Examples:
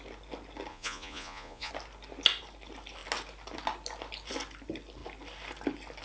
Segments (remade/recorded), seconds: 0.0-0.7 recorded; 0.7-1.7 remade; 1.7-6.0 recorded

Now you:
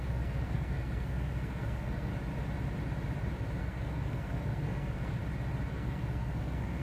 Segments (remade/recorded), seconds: 0.0-2.1 remade; 2.1-3.6 recorded; 3.6-5.2 remade; 5.2-5.7 recorded; 5.7-6.8 remade